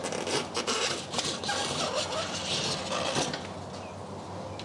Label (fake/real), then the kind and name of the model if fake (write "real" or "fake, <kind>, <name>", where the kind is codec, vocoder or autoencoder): real